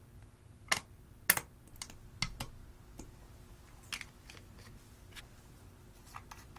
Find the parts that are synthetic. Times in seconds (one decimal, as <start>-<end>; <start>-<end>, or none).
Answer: none